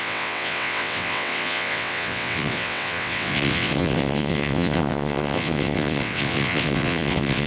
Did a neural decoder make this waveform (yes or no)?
yes